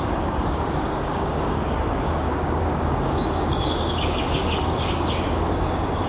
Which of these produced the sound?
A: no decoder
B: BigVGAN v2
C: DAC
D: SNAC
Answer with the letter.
C